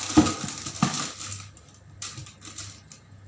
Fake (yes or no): yes